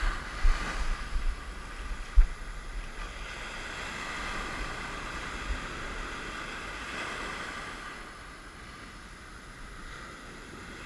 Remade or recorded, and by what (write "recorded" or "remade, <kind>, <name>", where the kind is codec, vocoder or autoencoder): recorded